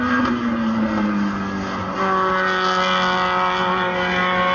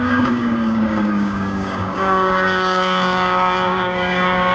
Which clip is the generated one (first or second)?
second